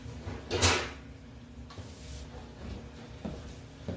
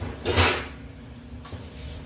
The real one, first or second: first